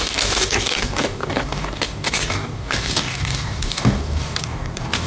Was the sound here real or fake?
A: fake